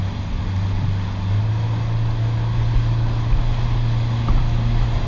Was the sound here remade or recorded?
recorded